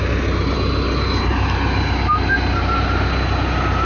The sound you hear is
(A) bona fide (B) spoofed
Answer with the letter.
A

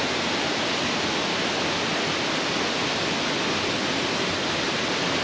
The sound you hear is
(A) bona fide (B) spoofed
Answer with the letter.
A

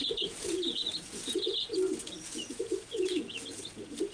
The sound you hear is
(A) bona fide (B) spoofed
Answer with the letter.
B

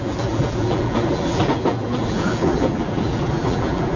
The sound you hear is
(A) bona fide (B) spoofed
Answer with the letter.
B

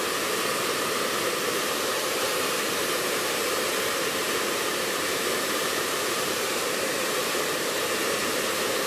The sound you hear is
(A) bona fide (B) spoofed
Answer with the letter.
B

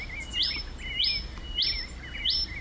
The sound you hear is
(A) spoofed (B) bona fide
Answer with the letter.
B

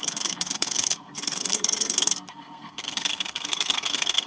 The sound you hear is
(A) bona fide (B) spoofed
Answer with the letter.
B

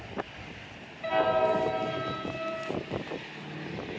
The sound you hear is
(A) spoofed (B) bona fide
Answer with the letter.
B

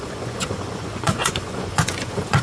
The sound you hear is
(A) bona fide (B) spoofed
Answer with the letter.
B